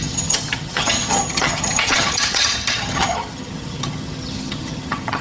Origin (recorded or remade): remade